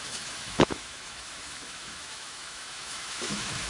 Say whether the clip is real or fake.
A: fake